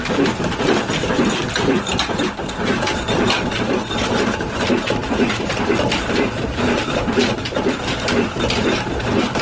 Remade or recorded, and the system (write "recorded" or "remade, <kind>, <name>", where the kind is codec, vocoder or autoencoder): remade, vocoder, BigVGAN v2